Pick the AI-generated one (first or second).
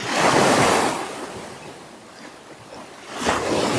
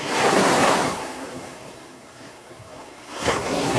second